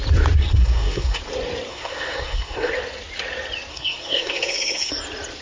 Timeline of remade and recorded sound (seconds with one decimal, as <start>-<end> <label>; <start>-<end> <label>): 0.0-0.4 recorded; 0.4-1.2 remade; 1.2-1.7 recorded; 1.7-2.7 remade; 2.7-3.7 recorded; 3.7-4.9 remade; 4.9-5.4 recorded